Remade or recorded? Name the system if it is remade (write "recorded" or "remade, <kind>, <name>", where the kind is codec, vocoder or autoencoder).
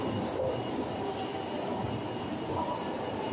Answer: remade, vocoder, BigVGAN v2